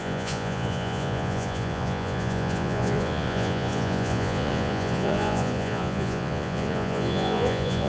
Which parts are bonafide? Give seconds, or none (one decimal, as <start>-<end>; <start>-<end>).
none